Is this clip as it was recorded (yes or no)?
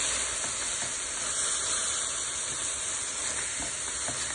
yes